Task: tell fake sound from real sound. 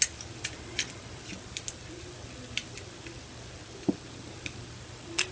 real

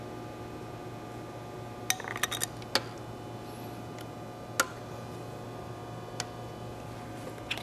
real